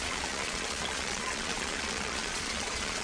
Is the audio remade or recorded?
remade